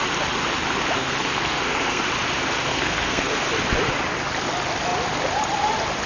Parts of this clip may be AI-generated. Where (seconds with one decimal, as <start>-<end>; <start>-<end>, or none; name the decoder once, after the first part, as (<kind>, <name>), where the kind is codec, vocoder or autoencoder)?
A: 1.0-2.0 (codec, SNAC); 2.7-3.5